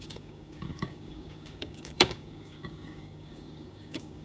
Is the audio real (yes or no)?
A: no